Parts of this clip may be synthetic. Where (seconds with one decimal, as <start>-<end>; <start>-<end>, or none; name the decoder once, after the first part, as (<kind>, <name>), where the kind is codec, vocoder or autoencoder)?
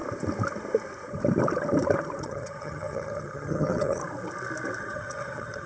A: 2.2-4.0 (vocoder, HiFi-GAN); 4.8-5.7